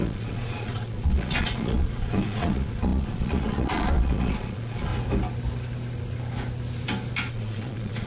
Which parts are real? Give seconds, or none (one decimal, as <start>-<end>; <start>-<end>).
4.9-7.3